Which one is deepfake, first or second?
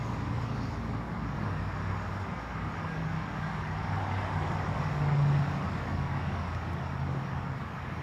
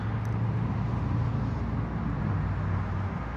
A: first